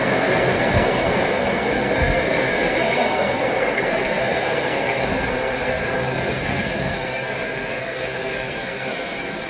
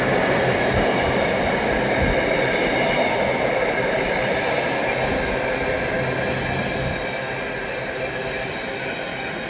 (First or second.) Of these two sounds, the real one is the second